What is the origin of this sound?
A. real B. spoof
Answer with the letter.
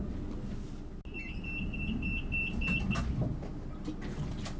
A